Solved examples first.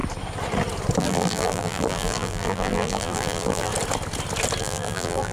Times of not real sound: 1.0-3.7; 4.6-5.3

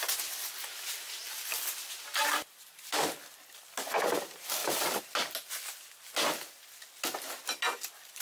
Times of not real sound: 1.2-2.0

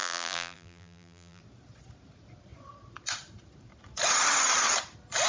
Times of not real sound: 0.0-1.4

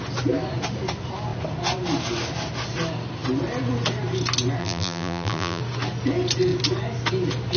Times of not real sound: 4.6-5.6

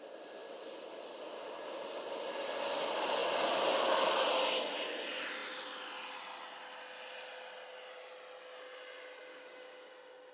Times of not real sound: 9.2-9.9

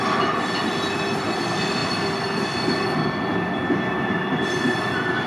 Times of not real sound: none